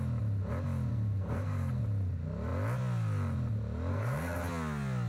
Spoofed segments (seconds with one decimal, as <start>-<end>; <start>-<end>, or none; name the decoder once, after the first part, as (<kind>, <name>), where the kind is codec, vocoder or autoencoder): 0.9-1.8 (codec, SNAC); 3.9-4.4